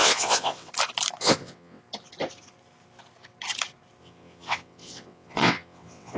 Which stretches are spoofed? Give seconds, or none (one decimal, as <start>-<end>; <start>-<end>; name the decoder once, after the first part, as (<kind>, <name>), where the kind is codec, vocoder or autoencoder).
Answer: 0.0-0.7 (vocoder, WaveNeXt); 1.2-1.8; 4.0-6.2